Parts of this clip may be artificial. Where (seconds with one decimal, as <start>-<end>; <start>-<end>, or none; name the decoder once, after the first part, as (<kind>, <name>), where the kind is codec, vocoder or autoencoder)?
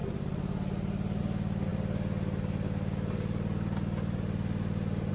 0.0-1.2 (vocoder, BigVGAN v2)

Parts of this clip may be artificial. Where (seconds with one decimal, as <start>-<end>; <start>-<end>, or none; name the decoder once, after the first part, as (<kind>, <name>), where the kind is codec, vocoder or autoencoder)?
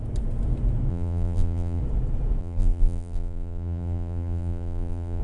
0.9-1.8 (vocoder, BigVGAN v2); 2.4-5.2